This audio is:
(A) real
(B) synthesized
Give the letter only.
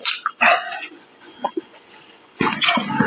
B